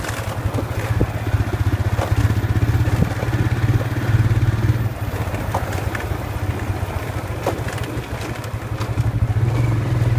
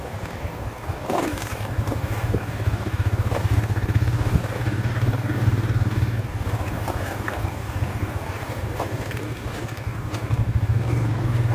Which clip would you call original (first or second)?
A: first